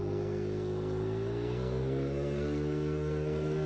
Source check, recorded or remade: remade